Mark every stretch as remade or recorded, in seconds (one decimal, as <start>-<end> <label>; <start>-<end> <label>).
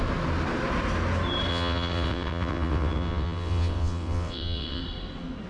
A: 0.0-1.5 recorded; 1.5-4.8 remade; 4.8-5.5 recorded